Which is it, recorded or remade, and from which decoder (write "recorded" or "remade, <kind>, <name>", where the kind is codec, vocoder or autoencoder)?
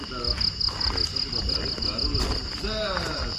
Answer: recorded